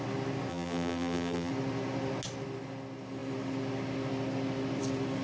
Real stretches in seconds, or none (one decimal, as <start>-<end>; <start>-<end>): 0.0-0.5; 1.5-5.2